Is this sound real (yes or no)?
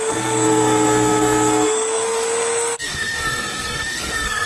no